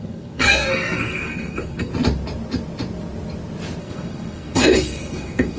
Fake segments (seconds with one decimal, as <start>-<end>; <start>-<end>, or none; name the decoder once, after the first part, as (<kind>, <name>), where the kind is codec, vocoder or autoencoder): 0.0-1.9 (codec, SNAC); 3.8-5.6